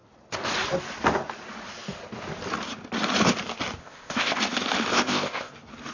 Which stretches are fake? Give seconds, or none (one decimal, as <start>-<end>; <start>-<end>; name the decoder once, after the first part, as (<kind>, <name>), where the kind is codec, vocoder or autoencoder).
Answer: 3.8-4.4 (codec, ZipCodec); 4.9-5.5